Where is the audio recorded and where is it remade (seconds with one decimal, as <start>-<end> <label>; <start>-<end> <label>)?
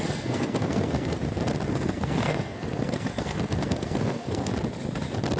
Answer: 0.0-1.2 remade; 1.2-1.7 recorded; 1.7-4.5 remade; 4.5-5.4 recorded